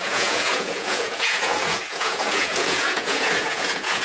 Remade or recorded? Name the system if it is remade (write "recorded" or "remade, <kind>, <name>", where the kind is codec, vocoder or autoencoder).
remade, vocoder, Vocos